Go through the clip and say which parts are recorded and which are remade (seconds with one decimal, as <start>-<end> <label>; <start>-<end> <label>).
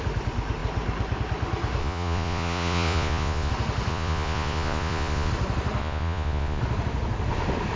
0.0-1.8 recorded; 1.8-3.5 remade; 3.5-3.9 recorded; 3.9-5.3 remade; 5.3-5.8 recorded; 5.8-6.6 remade; 6.6-7.8 recorded